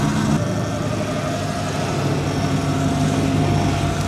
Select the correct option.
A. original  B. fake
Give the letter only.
A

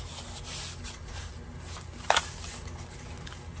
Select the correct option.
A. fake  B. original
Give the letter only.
B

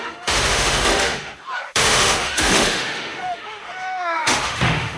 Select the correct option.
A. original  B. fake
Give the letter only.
B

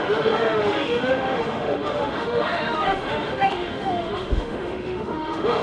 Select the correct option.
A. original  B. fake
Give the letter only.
B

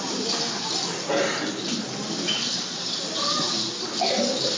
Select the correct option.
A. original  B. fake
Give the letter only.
A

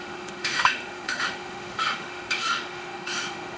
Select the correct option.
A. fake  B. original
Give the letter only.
A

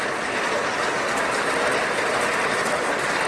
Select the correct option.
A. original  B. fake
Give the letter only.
A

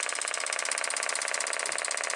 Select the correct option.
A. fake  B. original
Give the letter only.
B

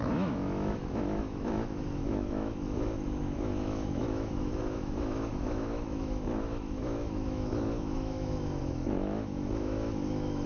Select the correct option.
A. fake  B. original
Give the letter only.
A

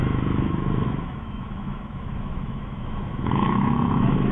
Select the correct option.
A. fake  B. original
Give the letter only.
A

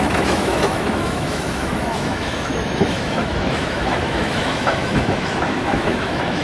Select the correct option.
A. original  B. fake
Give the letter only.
B